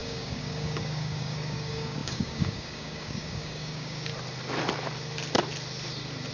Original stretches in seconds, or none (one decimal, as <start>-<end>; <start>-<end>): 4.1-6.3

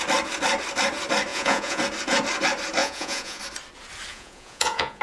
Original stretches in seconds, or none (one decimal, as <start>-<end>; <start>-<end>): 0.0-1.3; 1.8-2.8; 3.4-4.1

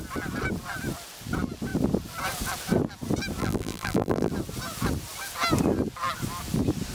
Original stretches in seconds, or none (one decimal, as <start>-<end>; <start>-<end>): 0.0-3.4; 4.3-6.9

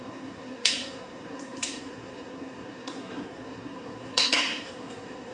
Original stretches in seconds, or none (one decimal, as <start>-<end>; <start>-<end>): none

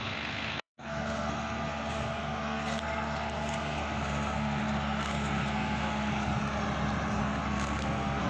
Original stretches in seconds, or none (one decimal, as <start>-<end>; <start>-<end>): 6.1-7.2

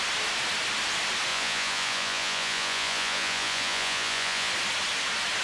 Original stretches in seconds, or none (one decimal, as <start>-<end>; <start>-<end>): 0.0-1.3; 4.5-5.4